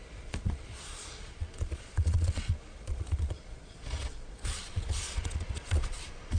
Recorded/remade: remade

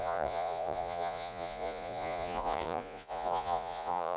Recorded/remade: remade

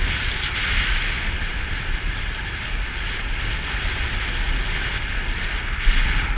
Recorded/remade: recorded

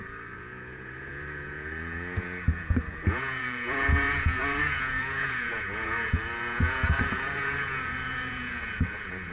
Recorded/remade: remade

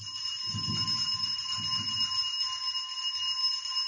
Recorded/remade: recorded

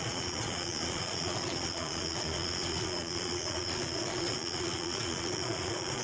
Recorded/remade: remade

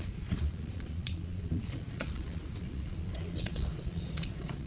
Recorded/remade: remade